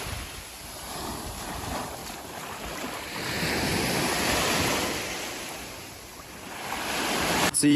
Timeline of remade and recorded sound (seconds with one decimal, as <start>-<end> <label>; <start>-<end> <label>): 0.0-2.0 remade; 2.0-2.9 recorded; 2.9-7.8 remade